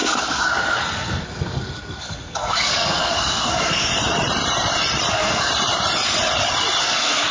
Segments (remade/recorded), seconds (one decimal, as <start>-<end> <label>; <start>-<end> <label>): 0.0-3.9 remade; 3.9-5.1 recorded; 5.1-5.5 remade; 5.5-6.8 recorded; 6.8-7.3 remade